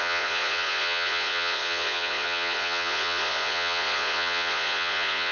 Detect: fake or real fake